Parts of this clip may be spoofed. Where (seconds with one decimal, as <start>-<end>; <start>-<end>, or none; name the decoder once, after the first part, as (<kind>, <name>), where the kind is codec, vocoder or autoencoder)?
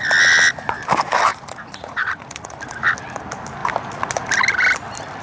1.3-2.6 (vocoder, Vocos)